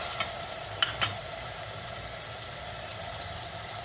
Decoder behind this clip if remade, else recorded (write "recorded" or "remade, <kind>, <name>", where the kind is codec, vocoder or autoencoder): remade, vocoder, BigVGAN v2